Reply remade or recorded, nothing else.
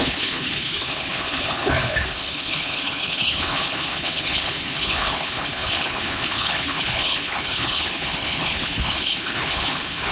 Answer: remade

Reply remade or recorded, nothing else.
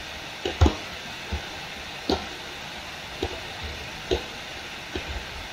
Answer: recorded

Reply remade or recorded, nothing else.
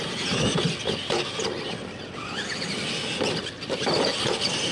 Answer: recorded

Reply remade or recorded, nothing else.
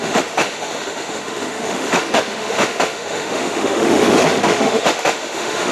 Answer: remade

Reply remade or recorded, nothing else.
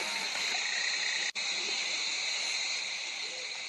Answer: recorded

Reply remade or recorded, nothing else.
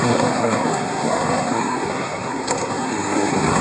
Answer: remade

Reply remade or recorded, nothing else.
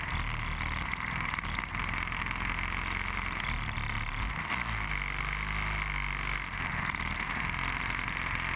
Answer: recorded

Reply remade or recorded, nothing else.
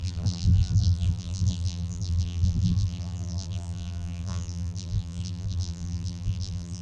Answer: remade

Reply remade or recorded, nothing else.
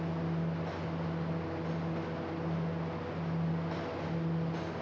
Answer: recorded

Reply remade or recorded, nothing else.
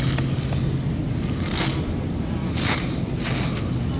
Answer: recorded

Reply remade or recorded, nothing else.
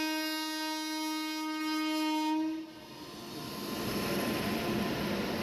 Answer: recorded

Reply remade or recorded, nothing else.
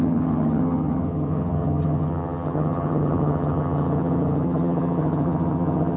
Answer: remade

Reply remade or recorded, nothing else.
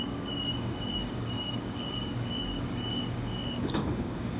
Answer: remade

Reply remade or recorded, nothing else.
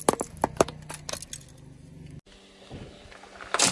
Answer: recorded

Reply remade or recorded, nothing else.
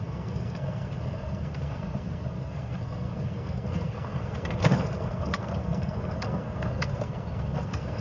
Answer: remade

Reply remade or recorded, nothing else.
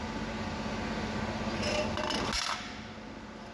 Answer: recorded